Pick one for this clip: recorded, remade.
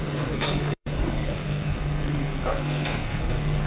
remade